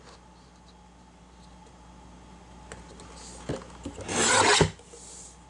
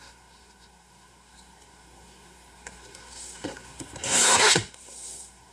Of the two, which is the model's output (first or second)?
second